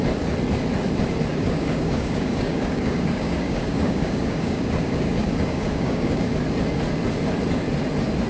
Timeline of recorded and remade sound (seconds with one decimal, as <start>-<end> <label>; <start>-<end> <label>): 0.0-1.3 recorded; 1.3-6.3 remade; 6.3-8.3 recorded